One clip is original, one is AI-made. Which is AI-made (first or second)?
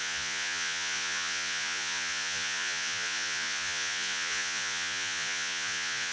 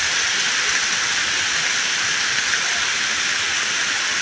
first